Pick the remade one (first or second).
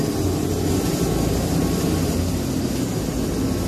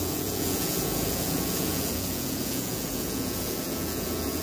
second